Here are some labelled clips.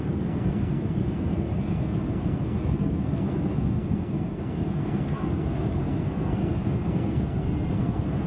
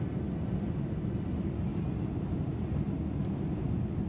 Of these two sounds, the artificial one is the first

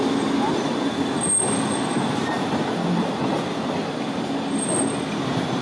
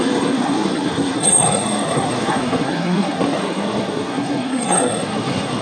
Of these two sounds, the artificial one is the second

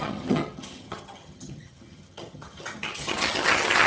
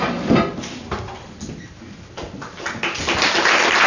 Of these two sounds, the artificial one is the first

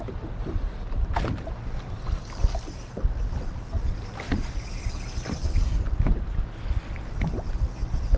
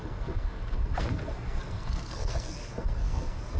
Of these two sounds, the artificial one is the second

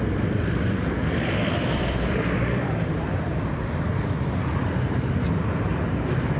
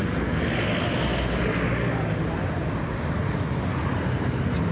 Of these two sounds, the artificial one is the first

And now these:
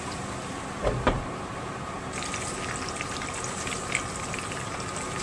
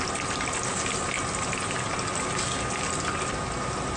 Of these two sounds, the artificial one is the first